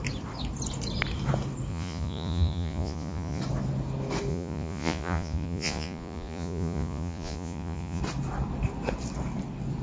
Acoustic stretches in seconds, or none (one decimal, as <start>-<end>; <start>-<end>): 0.0-1.7; 3.4-4.3; 8.0-9.8